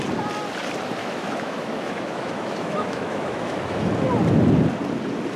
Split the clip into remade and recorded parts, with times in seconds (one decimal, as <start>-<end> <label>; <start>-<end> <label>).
0.0-1.0 recorded; 1.0-3.9 remade; 3.9-5.4 recorded